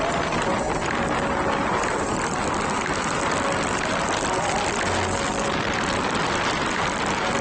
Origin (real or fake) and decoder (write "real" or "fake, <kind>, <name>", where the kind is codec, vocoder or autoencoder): real